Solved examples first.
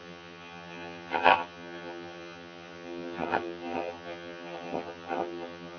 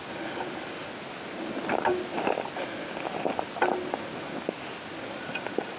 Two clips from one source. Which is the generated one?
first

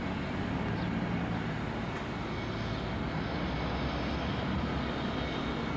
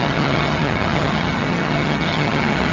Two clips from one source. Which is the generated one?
second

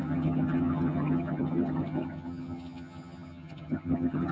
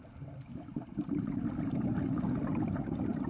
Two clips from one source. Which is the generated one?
first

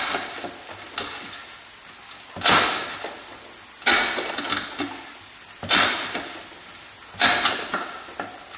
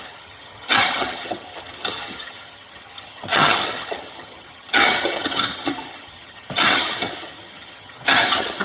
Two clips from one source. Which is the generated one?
second